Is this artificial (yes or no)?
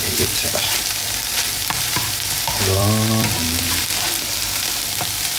yes